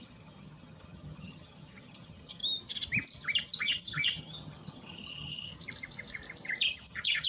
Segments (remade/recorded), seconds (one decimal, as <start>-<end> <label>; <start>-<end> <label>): 0.0-2.4 remade; 2.4-3.6 recorded; 3.6-5.5 remade; 5.5-6.7 recorded; 6.7-7.3 remade